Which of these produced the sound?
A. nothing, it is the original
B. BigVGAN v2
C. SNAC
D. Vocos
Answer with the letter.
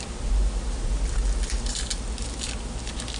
A